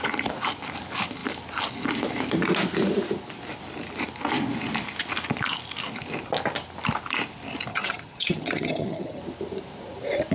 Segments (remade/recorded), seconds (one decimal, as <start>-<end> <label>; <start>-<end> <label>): 0.0-7.7 recorded; 7.7-9.2 remade; 9.2-10.3 recorded